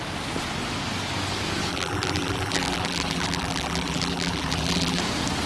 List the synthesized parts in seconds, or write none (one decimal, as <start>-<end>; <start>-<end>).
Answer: 1.7-5.0

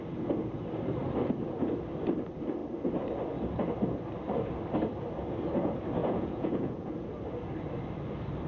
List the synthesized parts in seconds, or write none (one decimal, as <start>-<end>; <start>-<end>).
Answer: 6.0-7.1

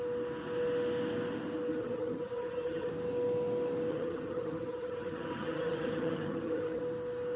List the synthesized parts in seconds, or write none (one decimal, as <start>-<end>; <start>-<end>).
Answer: 1.7-2.9; 3.9-6.8

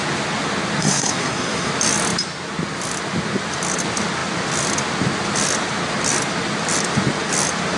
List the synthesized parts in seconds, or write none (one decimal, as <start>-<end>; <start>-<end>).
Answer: 0.8-1.7

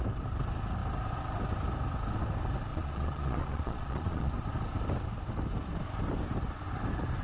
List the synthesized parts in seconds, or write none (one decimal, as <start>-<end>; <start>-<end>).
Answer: 2.7-4.3

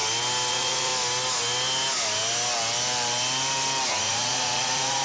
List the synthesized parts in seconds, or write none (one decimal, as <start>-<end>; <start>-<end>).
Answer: 0.5-0.9; 3.9-5.0

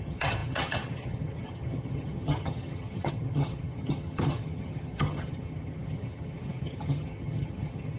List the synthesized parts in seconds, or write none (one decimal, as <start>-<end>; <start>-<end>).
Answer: 0.0-8.0